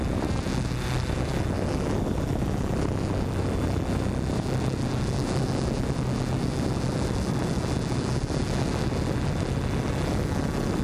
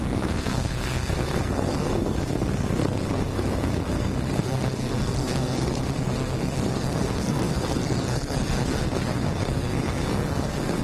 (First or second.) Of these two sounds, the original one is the first